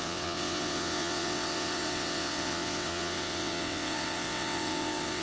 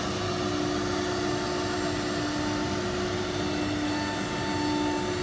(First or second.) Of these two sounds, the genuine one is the second